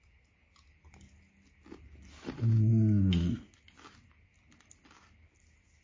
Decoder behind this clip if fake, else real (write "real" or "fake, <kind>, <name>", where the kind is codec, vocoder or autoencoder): real